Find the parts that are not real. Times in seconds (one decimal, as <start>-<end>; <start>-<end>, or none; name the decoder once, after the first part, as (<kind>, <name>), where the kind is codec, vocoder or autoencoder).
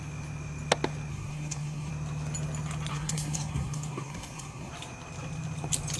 1.1-1.9 (codec, SNAC); 2.9-4.7